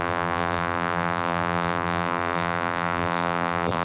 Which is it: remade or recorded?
remade